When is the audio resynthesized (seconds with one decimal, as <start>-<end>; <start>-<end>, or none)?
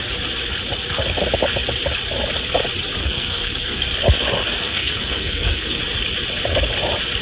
3.0-3.8; 4.5-5.8